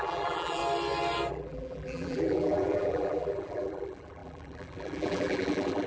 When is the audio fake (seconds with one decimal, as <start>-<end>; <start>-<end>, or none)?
0.0-0.6; 1.3-5.9